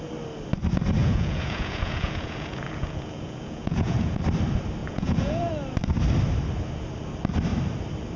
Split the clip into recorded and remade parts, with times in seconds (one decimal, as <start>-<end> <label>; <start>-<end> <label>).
0.0-1.0 recorded; 1.0-4.2 remade; 4.2-4.8 recorded; 4.8-5.5 remade; 5.5-8.2 recorded